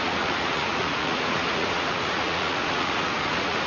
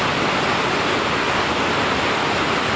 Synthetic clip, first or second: first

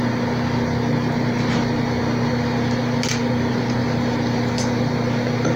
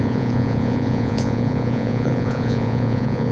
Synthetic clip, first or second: second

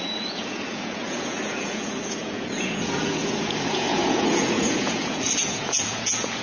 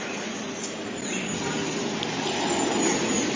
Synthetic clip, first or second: first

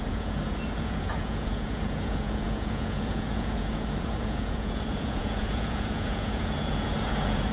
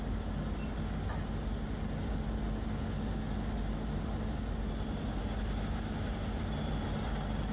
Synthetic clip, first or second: first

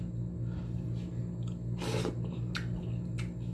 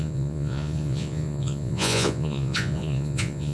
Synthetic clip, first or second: second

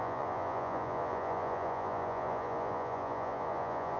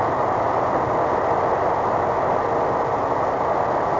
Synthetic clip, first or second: first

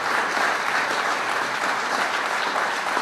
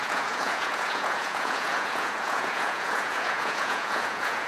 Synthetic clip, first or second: second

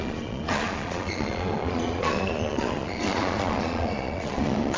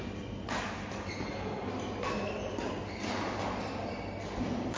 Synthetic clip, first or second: first